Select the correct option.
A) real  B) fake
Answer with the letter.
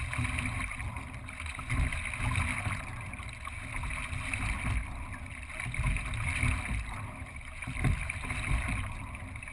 A